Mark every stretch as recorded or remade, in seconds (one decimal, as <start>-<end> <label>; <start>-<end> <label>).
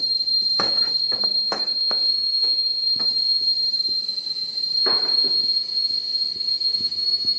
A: 0.0-1.3 recorded; 1.3-3.0 remade; 3.0-7.4 recorded